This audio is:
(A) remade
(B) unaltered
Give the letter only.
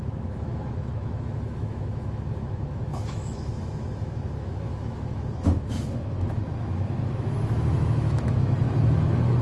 A